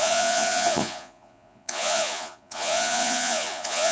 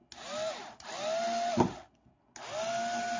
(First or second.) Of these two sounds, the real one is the second